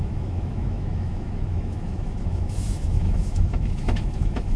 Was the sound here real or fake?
fake